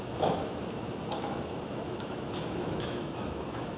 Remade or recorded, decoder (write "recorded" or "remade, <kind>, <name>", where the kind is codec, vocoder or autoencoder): remade, autoencoder, DAC-VAE